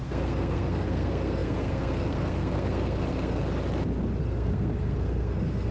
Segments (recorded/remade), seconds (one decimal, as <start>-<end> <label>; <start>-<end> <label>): 0.0-3.4 remade; 3.4-4.2 recorded; 4.2-5.7 remade